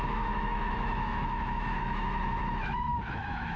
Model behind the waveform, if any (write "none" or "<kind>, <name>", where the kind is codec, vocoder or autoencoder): autoencoder, DAC-VAE